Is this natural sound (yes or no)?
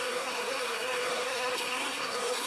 no